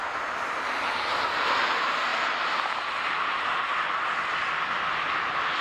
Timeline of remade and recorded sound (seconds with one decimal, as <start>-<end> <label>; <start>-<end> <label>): 0.0-5.6 recorded